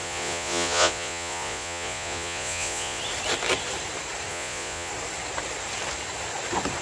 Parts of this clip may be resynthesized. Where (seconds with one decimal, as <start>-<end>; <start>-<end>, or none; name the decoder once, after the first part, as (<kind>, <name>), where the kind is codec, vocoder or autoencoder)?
0.0-3.0 (vocoder, Vocos); 4.3-4.9